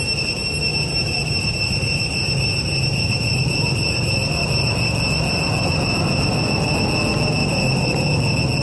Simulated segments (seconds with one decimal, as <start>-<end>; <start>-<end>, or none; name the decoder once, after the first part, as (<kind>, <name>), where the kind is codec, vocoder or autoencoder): 0.7-4.4 (vocoder, BigVGAN v2); 7.4-8.1